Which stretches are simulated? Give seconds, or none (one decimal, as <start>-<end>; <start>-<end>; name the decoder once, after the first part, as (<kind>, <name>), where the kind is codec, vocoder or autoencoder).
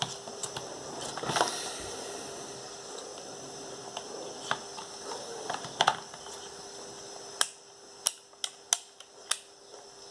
0.4-1.1 (vocoder, BigVGAN v2); 3.1-3.8